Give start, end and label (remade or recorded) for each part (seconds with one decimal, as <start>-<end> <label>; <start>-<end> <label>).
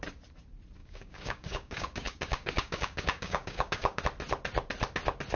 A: 0.0-0.8 recorded; 0.8-4.0 remade; 4.0-5.4 recorded